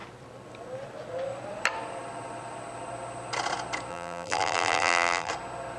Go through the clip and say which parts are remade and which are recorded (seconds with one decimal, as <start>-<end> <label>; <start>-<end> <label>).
0.0-3.9 recorded; 3.9-5.3 remade; 5.3-5.8 recorded